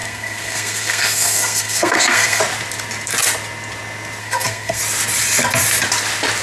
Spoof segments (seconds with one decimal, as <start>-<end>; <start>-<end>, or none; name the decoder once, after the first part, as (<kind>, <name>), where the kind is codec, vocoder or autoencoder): 0.0-2.4 (codec, SNAC); 4.2-4.8